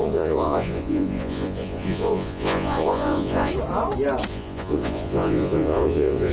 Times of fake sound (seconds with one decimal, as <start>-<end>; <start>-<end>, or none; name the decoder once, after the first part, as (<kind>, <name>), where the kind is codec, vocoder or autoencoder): 0.0-3.5 (vocoder, Vocos); 4.3-6.3